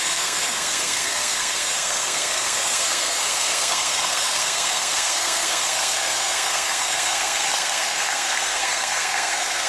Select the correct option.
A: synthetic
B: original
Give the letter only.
A